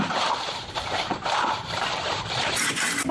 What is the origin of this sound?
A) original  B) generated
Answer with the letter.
B